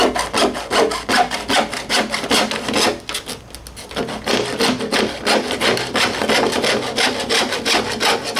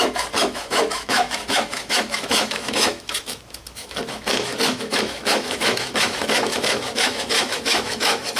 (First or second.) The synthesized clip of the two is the second